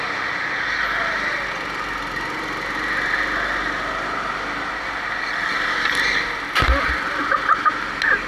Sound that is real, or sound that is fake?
real